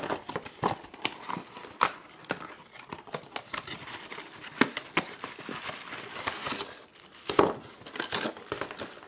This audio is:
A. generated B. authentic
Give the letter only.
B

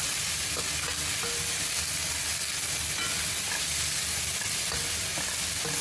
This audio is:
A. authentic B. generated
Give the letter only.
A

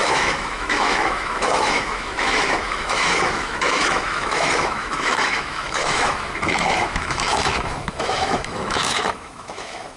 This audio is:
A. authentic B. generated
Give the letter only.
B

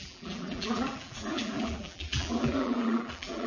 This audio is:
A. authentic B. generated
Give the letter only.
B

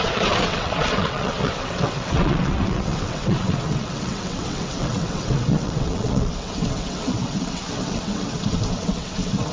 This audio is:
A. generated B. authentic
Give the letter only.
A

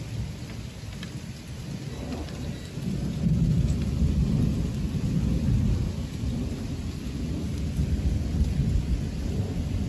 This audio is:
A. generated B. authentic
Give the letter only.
B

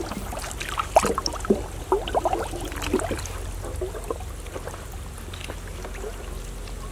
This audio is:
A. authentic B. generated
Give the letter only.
A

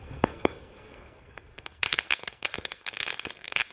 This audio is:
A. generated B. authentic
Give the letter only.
A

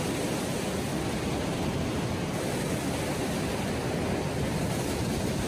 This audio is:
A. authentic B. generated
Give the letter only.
A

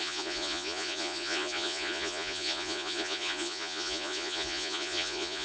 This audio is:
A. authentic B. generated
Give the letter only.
B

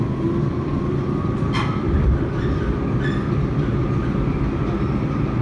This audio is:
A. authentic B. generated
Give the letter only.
B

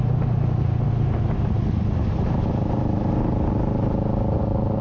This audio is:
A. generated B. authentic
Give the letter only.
B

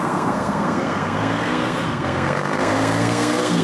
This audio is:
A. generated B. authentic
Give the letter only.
A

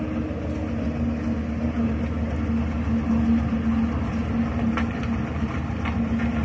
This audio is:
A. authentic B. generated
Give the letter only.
A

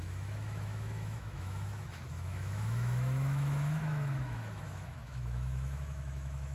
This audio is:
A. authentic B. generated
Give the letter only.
B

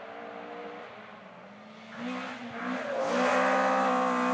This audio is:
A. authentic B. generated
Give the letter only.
A